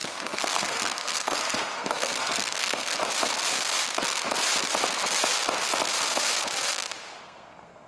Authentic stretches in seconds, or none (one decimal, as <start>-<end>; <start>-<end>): 3.0-7.2